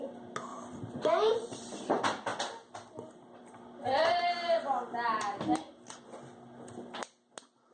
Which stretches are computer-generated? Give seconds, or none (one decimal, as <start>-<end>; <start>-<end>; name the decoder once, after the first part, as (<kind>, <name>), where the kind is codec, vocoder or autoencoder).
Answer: 0.5-1.9 (vocoder, BigVGAN v2)